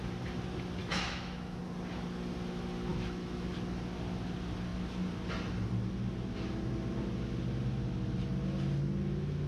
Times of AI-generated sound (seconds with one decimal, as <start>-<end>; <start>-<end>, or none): 0.8-1.6; 2.9-3.5